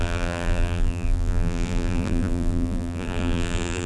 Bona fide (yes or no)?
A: no